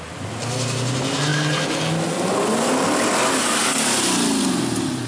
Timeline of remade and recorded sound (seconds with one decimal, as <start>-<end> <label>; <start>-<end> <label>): 0.0-5.1 recorded